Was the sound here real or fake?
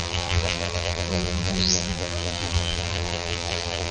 fake